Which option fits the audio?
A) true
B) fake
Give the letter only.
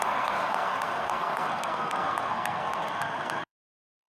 B